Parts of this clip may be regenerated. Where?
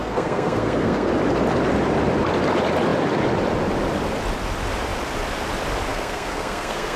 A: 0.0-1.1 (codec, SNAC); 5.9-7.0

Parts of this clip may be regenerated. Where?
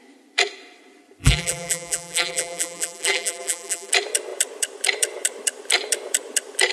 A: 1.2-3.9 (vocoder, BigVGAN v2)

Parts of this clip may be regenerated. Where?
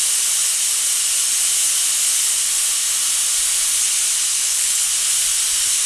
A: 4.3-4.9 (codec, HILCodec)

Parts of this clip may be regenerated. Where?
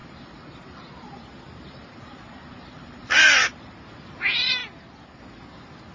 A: 0.0-3.5 (vocoder, BigVGAN v2)